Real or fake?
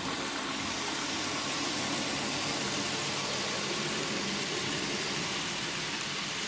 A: real